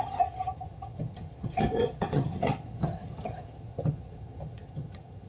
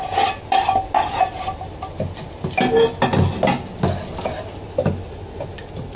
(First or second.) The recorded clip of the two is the second